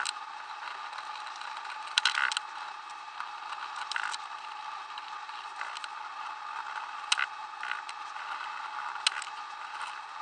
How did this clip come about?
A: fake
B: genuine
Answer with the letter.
B